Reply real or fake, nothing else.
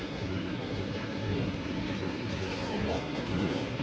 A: fake